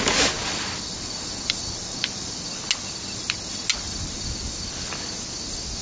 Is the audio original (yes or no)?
yes